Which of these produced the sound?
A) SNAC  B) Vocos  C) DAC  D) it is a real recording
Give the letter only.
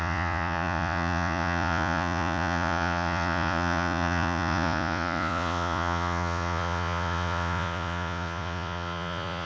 B